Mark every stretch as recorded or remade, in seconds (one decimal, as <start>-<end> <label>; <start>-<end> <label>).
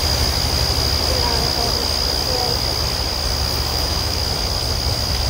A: 0.0-3.7 recorded; 3.7-4.2 remade; 4.2-5.3 recorded